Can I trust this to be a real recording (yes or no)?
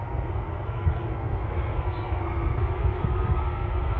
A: no